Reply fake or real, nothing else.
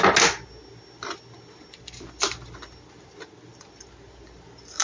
real